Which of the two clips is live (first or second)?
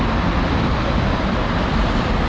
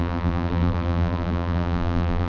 first